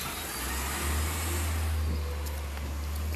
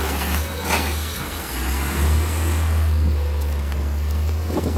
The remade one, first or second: second